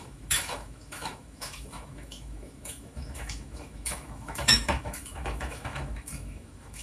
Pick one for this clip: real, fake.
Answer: fake